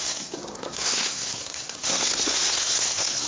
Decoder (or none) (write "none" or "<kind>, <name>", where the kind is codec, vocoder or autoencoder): codec, SNAC